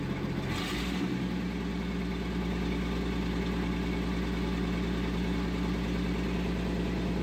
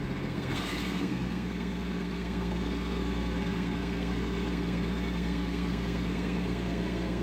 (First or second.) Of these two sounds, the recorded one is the first